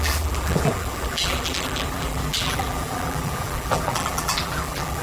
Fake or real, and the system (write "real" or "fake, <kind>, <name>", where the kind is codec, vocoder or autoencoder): fake, vocoder, BigVGAN v2